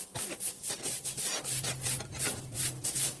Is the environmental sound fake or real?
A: real